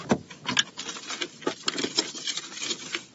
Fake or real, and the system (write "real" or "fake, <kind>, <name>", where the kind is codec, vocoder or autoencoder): real